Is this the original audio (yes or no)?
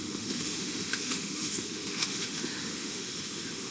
no